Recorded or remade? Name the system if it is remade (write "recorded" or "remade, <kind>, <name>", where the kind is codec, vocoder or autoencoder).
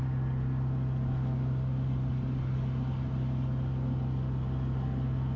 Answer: recorded